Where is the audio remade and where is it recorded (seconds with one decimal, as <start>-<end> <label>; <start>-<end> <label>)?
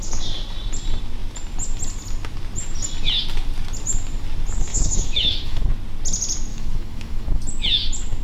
0.0-4.7 recorded; 4.7-5.7 remade; 5.7-6.5 recorded; 6.5-7.4 remade; 7.4-8.2 recorded